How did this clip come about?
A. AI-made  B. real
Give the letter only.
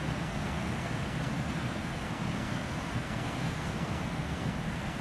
A